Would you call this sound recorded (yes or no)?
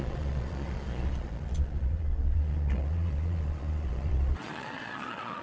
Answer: no